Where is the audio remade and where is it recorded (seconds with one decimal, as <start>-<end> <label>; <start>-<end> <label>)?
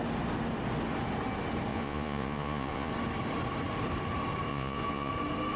0.0-1.7 recorded; 1.7-2.9 remade; 2.9-4.5 recorded; 4.5-5.1 remade; 5.1-5.6 recorded